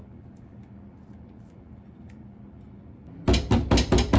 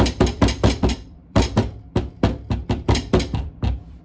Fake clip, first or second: second